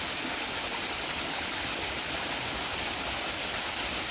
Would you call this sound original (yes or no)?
yes